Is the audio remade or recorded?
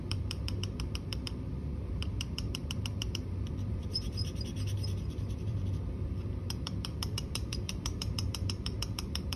remade